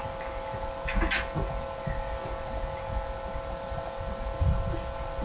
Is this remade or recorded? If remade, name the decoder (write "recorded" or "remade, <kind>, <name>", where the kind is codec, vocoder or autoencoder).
recorded